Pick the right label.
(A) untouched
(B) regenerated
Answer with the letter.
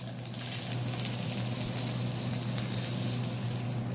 A